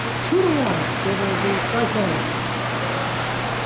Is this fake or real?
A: real